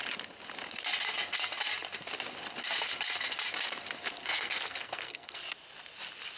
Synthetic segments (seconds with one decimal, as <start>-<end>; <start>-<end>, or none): 4.2-5.4